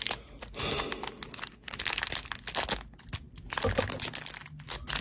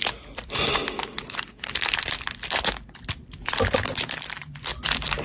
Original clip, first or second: first